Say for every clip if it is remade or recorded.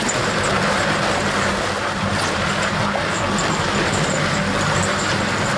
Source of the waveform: recorded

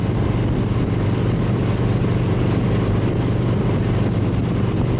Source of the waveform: recorded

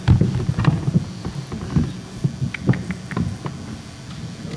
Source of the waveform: recorded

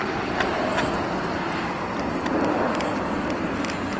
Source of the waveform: recorded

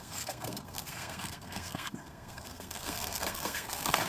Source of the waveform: remade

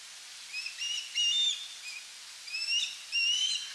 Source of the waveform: recorded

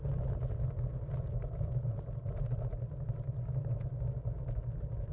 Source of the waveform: recorded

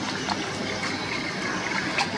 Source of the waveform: recorded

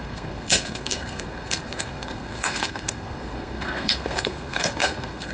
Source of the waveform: remade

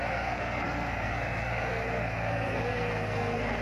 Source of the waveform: remade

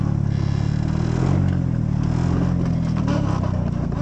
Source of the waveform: recorded